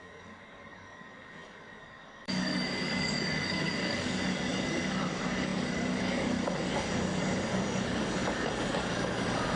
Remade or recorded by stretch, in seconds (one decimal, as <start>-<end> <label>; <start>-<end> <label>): 0.0-9.6 remade